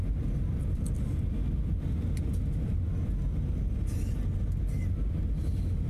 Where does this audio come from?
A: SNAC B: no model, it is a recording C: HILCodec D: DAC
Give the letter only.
B